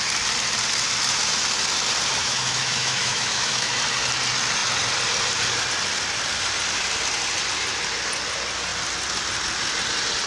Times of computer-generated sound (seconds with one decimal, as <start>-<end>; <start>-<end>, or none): 2.2-3.7